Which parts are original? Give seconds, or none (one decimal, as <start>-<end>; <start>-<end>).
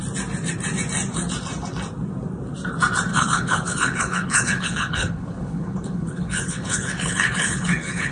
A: 0.0-3.1